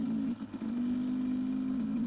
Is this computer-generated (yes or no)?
no